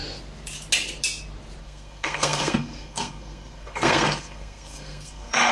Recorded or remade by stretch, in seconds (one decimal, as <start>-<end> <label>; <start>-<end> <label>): 0.0-1.6 recorded; 1.6-5.5 remade